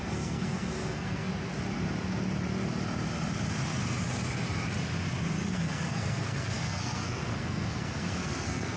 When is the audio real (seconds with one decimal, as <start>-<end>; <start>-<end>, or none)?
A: 1.3-5.5